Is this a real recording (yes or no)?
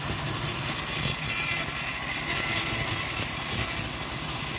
yes